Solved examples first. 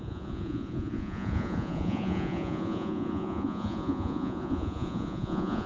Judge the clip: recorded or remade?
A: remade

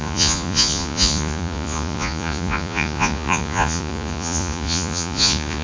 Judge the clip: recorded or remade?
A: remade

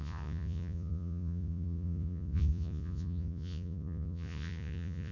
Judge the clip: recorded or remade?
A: remade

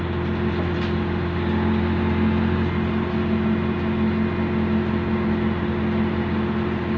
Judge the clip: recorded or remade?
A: recorded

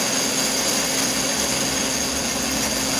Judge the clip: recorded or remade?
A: recorded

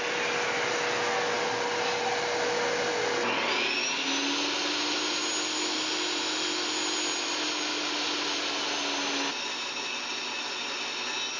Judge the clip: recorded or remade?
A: recorded